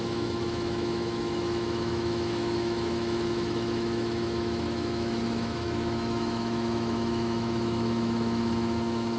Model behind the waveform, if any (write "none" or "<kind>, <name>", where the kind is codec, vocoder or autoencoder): autoencoder, DAC-VAE